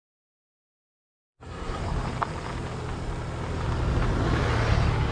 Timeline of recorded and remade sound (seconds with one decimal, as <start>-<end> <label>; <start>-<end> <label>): 0.0-1.2 recorded; 1.2-1.8 remade; 1.8-5.1 recorded